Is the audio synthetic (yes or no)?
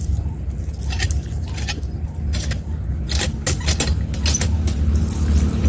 no